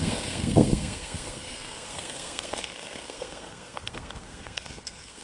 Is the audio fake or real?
fake